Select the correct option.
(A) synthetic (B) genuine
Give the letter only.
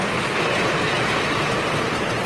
B